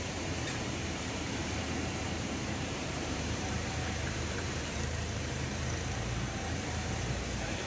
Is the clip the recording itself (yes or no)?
no